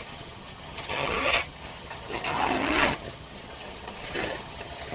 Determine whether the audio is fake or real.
fake